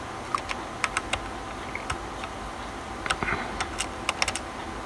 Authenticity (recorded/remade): recorded